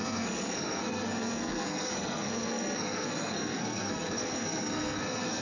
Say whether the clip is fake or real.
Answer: fake